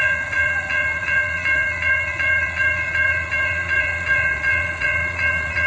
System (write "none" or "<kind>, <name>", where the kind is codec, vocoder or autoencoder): vocoder, Vocos